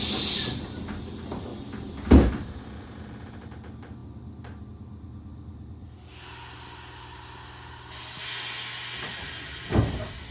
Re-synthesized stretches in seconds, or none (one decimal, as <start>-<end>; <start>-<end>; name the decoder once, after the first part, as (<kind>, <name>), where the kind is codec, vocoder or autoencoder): 4.0-4.7 (vocoder, BigVGAN v2)